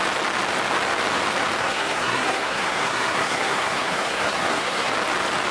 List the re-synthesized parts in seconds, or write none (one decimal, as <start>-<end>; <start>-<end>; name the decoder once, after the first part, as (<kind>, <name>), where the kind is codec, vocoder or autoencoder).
1.6-4.9 (codec, SNAC)